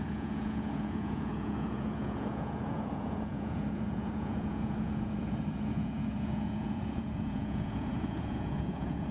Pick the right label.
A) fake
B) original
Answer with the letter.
A